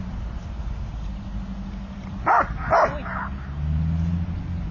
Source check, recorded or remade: recorded